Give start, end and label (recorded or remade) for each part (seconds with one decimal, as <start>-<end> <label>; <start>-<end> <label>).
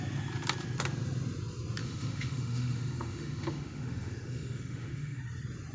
0.0-1.8 recorded; 1.8-5.2 remade; 5.2-5.7 recorded